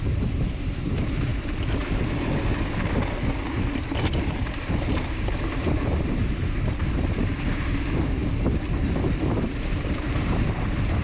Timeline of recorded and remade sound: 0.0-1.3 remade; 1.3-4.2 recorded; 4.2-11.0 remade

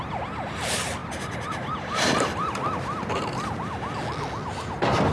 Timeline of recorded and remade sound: 0.0-1.0 recorded; 1.0-3.7 remade; 3.7-5.1 recorded

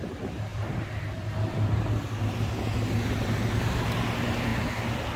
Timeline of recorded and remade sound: 0.0-0.5 recorded; 0.5-2.2 remade; 2.2-5.2 recorded

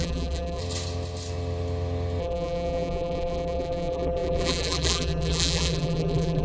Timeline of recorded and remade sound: 0.0-0.6 remade; 0.6-2.2 recorded; 2.2-6.4 remade

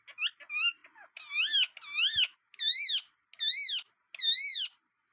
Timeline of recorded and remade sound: 0.0-4.5 recorded; 4.5-5.1 remade